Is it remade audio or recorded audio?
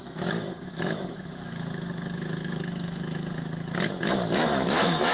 remade